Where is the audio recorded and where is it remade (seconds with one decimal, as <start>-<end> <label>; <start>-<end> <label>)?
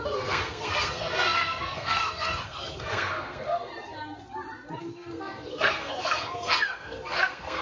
0.0-3.7 remade; 3.7-4.8 recorded; 4.8-7.6 remade